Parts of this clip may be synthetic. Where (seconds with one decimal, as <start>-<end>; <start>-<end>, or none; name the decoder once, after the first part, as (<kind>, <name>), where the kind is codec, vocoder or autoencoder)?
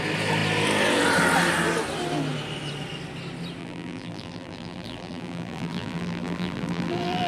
3.6-7.3 (vocoder, BigVGAN v2)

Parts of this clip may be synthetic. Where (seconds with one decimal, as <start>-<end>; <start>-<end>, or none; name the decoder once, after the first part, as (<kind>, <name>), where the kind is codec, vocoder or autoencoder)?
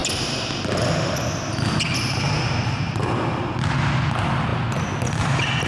none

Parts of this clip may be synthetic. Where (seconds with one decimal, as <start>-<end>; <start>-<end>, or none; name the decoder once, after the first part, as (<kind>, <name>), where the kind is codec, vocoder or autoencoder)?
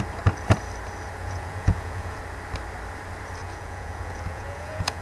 1.2-2.2 (vocoder, Vocos); 3.4-5.0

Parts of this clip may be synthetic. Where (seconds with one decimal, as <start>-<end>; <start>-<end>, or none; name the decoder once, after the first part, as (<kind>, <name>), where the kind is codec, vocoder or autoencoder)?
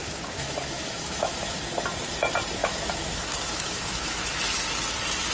0.0-1.6 (autoencoder, DAC-VAE); 2.6-4.3